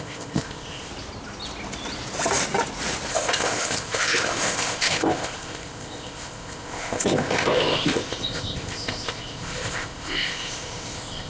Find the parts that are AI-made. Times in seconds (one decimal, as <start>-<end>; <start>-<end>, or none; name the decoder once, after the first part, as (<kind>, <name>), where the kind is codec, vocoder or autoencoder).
0.0-0.9 (codec, ZipCodec); 3.1-11.3